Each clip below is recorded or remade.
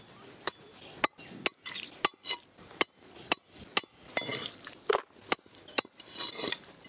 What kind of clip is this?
recorded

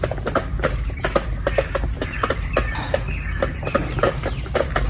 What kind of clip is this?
recorded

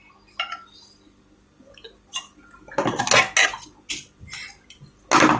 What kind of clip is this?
recorded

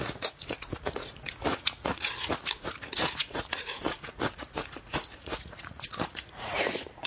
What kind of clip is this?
remade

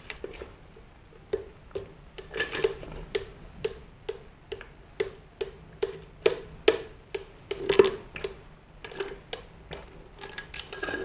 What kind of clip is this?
recorded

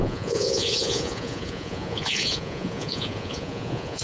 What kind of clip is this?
remade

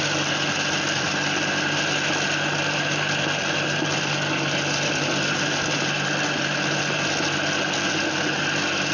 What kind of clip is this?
recorded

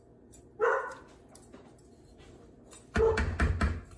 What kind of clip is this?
recorded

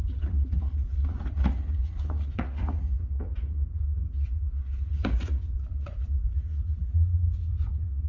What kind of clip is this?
remade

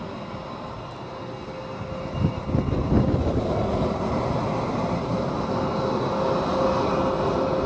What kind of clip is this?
recorded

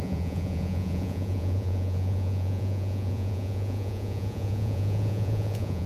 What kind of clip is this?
remade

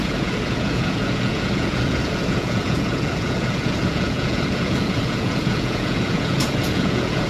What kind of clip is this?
remade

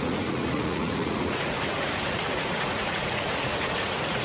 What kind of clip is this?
remade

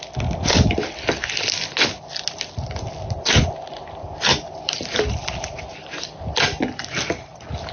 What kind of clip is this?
recorded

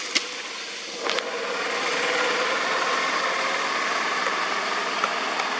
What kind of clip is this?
recorded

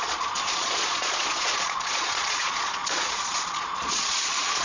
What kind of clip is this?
remade